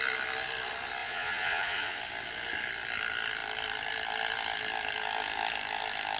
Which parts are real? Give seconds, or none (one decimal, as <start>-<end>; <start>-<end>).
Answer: 0.0-1.0; 2.0-6.2